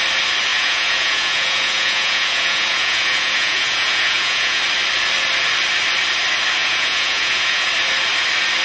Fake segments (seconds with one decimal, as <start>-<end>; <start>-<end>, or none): 0.5-4.6; 6.6-7.7